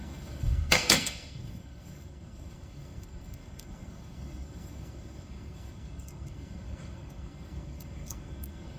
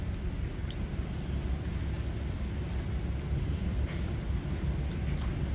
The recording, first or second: second